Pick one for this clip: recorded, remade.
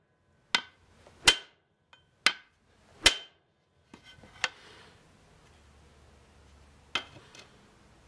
recorded